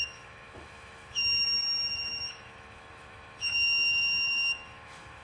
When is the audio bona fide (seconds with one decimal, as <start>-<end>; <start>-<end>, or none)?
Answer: none